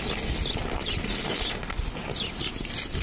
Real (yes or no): yes